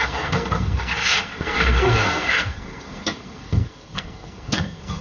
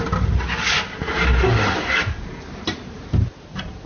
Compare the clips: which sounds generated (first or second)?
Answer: first